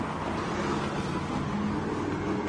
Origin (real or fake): real